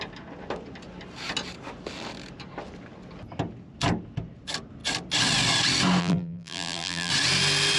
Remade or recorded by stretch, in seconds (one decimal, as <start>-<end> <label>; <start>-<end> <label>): 0.0-6.0 recorded; 6.0-7.1 remade; 7.1-7.8 recorded